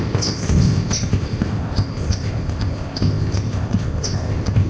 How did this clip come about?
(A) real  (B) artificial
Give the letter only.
B